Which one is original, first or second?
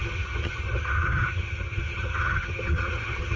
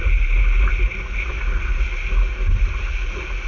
second